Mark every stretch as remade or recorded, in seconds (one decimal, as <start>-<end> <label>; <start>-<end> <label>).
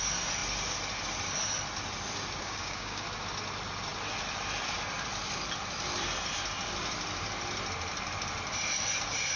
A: 0.0-2.4 recorded; 2.4-3.0 remade; 3.0-9.4 recorded